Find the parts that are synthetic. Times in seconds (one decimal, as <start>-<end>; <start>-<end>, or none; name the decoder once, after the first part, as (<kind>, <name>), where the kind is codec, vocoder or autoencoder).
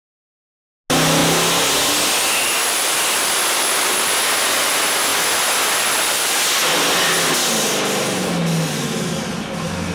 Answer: none